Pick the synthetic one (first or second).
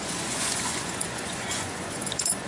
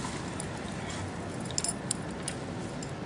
first